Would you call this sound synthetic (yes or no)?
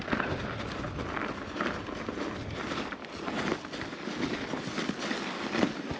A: no